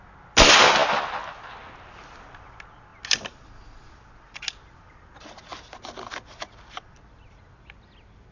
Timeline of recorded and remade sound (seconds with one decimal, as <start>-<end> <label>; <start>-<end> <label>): 0.0-8.3 recorded